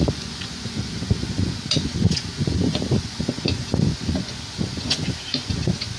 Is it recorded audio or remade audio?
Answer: remade